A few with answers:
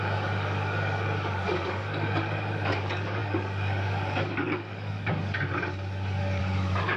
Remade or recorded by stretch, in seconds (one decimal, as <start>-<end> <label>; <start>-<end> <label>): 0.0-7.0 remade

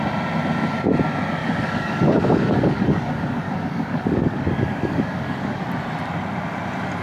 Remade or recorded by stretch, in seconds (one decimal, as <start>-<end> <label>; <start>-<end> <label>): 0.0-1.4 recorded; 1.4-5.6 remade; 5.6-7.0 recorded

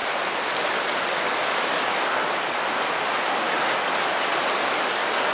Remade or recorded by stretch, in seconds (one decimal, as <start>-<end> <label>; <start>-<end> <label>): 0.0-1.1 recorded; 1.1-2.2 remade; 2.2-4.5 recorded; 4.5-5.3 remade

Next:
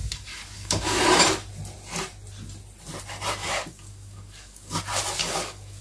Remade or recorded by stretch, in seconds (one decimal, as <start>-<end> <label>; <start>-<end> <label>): 0.0-1.0 remade; 1.0-3.4 recorded; 3.4-4.8 remade; 4.8-5.2 recorded; 5.2-5.8 remade

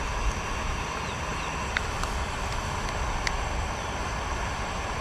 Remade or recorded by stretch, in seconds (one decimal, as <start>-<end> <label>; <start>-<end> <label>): 0.0-5.0 recorded

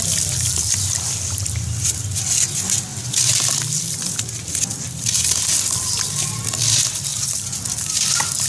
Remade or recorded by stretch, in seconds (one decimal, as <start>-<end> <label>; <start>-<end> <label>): 0.0-8.5 recorded